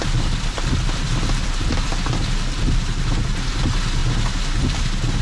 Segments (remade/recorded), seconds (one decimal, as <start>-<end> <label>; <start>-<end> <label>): 0.0-1.9 remade; 1.9-3.1 recorded; 3.1-4.0 remade; 4.0-5.2 recorded